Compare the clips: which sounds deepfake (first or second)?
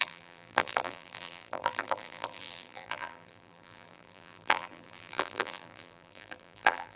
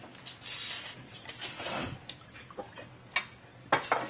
first